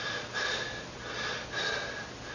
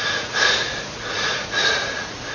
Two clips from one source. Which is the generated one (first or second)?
second